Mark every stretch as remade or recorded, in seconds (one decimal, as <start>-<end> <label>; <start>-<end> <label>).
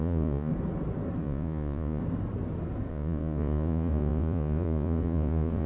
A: 0.0-0.5 remade; 0.5-1.2 recorded; 1.2-2.0 remade; 2.0-2.9 recorded; 2.9-5.7 remade